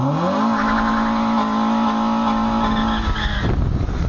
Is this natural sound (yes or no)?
yes